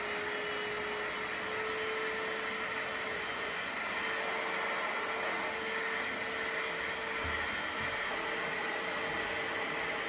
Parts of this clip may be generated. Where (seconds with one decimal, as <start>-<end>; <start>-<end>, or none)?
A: 3.1-3.8